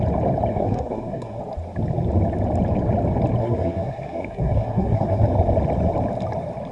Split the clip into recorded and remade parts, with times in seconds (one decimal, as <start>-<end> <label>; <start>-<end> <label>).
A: 0.0-0.5 recorded; 0.5-1.4 remade; 1.4-3.4 recorded; 3.4-5.2 remade; 5.2-6.7 recorded